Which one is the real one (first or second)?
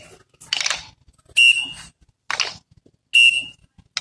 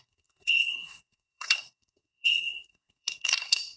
first